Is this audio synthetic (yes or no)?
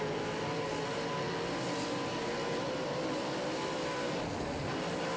no